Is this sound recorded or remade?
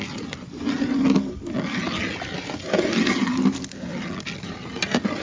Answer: recorded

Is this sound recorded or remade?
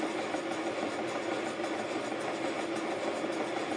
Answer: recorded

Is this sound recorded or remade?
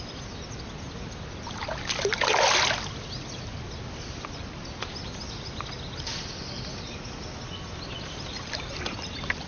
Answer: recorded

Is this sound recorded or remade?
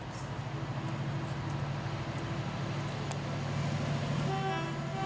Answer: recorded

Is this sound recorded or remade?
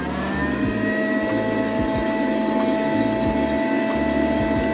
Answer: recorded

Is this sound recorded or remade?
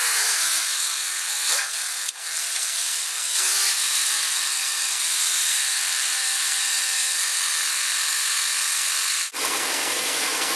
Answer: remade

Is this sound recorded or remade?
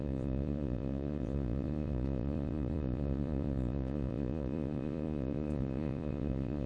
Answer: remade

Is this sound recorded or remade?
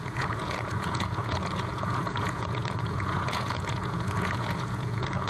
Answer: remade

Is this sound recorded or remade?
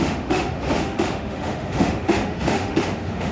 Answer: remade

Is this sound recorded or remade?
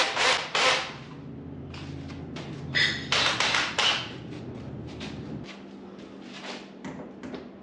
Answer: recorded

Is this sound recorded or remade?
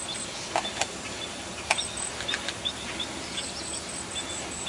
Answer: recorded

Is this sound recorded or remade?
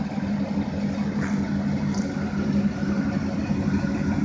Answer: recorded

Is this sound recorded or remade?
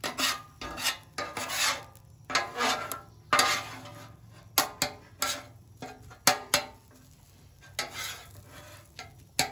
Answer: recorded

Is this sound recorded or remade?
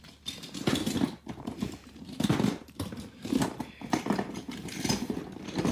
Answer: recorded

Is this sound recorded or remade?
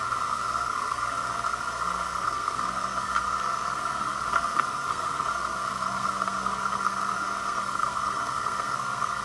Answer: remade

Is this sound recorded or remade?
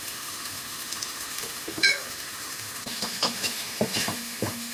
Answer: remade